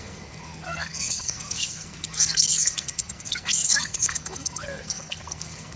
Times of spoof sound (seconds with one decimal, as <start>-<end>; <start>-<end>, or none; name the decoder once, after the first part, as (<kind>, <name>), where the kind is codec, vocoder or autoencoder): 0.0-5.8 (codec, SNAC)